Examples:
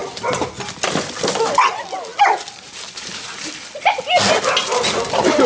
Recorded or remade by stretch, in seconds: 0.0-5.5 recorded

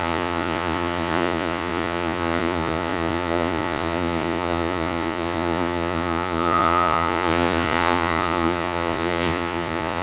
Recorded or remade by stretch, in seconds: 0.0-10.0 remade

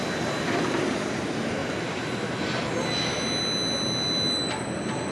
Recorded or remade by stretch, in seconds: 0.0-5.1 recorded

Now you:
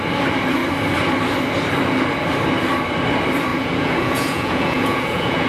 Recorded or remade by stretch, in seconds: 0.0-3.5 recorded; 3.5-5.5 remade

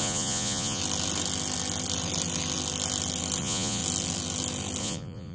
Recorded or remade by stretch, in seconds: 0.0-0.8 remade; 0.8-3.4 recorded; 3.4-3.8 remade; 3.8-4.8 recorded; 4.8-5.3 remade

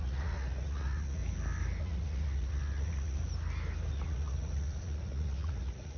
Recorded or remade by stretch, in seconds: 0.0-1.2 remade; 1.2-1.8 recorded; 1.8-3.2 remade; 3.2-3.9 recorded; 3.9-6.0 remade

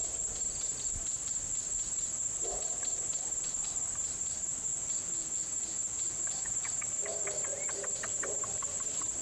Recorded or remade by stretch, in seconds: 0.0-4.7 recorded; 4.7-6.8 remade; 6.8-9.2 recorded

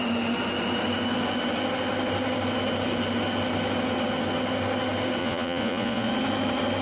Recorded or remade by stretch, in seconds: 0.0-5.2 recorded; 5.2-6.1 remade; 6.1-6.8 recorded